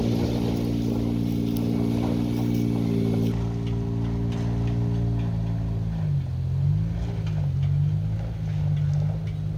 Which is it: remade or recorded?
recorded